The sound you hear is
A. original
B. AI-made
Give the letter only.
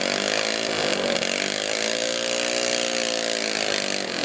A